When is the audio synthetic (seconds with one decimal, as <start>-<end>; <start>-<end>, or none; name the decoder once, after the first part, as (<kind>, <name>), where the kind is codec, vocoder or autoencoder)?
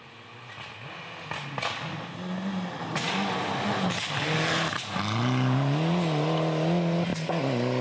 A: none